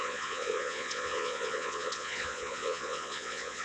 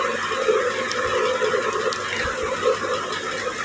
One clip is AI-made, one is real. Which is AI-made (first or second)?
first